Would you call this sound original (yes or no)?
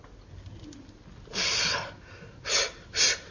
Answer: yes